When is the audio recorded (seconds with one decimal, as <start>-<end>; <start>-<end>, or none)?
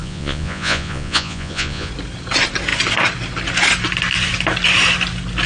1.9-5.5